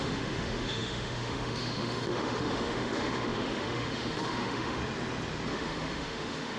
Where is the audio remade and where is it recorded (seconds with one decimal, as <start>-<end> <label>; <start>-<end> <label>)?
0.0-4.8 remade; 4.8-5.5 recorded; 5.5-6.6 remade